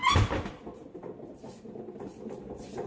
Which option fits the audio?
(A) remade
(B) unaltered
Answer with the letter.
B